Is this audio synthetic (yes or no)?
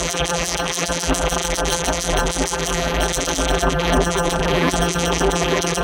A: yes